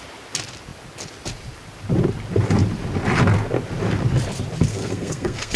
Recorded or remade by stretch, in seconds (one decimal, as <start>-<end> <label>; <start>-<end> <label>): 0.0-4.7 recorded; 4.7-5.6 remade